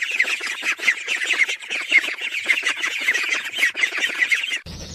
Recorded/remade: remade